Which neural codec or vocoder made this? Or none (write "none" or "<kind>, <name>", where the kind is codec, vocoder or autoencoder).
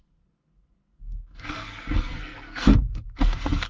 codec, SNAC